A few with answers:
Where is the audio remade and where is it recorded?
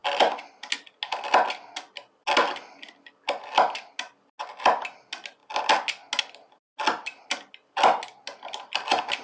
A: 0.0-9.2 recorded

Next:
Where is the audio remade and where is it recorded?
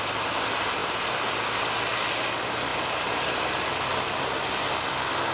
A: 0.0-5.3 recorded